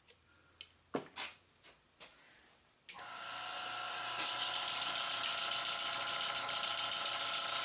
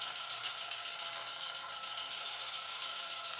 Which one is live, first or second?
first